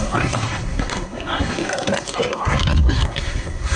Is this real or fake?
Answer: fake